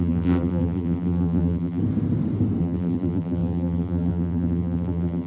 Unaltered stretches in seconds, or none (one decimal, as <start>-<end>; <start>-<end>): 1.8-2.6